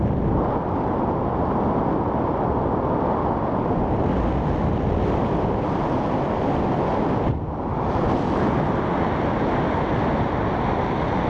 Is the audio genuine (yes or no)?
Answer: yes